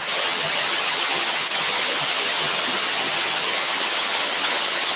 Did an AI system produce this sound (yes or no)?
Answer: yes